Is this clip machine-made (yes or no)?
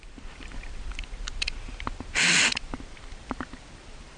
yes